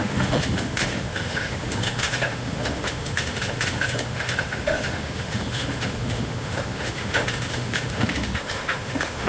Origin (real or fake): fake